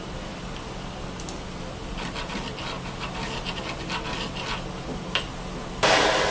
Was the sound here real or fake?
real